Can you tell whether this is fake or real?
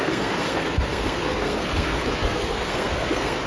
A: fake